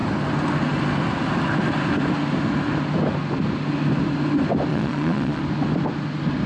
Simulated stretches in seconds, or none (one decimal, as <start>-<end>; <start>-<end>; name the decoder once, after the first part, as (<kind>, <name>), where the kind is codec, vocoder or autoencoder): 4.7-5.4 (vocoder, Vocos)